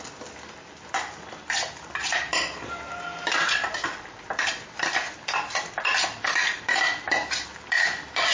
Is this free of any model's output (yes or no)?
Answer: yes